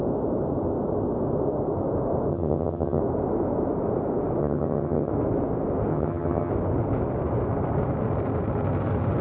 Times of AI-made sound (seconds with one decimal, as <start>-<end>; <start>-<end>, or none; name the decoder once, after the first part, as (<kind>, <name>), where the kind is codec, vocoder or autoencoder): 2.3-3.0 (vocoder, HiFi-GAN); 4.4-5.1; 5.9-6.5